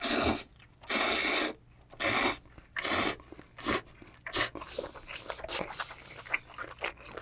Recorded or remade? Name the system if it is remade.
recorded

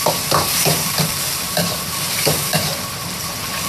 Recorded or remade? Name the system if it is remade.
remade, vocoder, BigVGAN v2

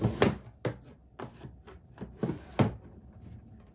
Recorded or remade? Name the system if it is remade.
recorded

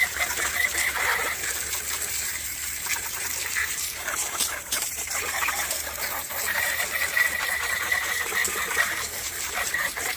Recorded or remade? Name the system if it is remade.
remade, vocoder, BigVGAN v2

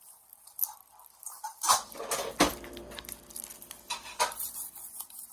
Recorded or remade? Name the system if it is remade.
recorded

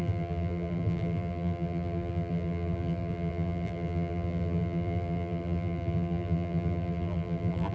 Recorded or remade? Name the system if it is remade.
remade, vocoder, BigVGAN v2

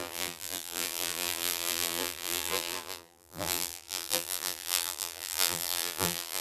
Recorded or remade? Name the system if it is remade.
remade, vocoder, BigVGAN v2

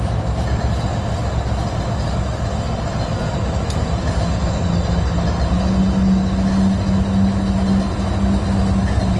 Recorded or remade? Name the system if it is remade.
recorded